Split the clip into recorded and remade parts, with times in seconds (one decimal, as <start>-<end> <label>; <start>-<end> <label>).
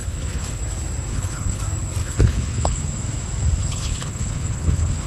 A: 0.0-0.6 remade; 0.6-1.1 recorded; 1.1-1.6 remade; 1.6-2.0 recorded; 2.0-2.8 remade; 2.8-3.6 recorded; 3.6-5.1 remade